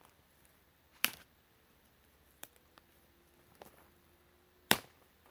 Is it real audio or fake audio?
fake